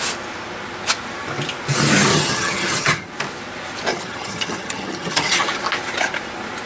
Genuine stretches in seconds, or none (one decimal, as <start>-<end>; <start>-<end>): 0.0-2.1; 3.1-3.9; 5.5-6.7

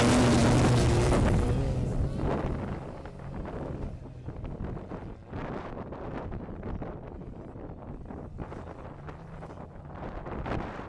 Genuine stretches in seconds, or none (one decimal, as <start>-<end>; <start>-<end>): 0.0-10.9

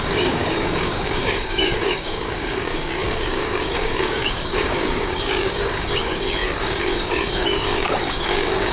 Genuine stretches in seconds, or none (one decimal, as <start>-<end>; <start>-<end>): none

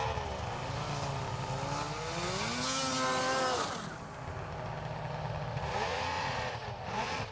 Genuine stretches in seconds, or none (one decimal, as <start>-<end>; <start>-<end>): 0.0-5.5